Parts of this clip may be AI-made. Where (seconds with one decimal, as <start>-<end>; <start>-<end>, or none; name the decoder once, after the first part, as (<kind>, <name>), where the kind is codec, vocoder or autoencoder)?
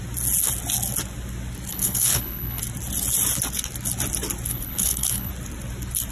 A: 1.7-2.6 (codec, HILCodec); 4.5-5.3